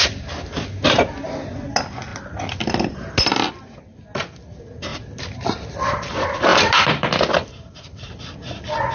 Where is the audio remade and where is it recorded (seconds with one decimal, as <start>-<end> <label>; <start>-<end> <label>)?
0.0-2.1 recorded; 2.1-2.9 remade; 2.9-4.9 recorded; 4.9-6.0 remade; 6.0-6.5 recorded; 6.5-7.2 remade; 7.2-8.9 recorded